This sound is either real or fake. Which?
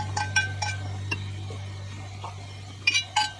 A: real